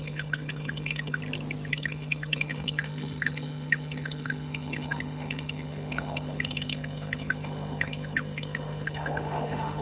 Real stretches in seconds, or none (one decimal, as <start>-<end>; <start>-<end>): 1.2-1.7